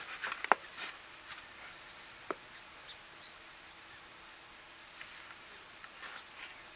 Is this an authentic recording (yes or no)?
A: yes